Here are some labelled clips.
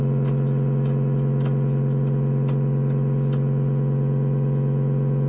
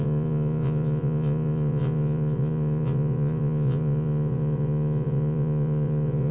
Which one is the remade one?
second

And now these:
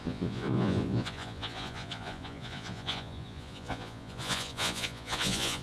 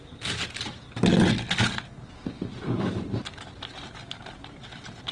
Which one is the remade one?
first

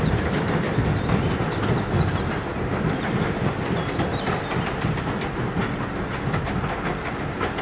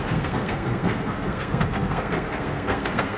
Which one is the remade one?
second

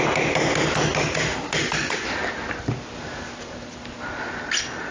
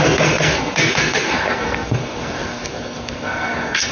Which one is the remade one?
second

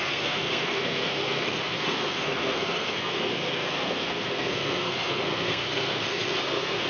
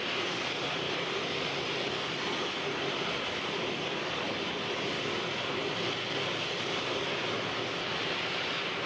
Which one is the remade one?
first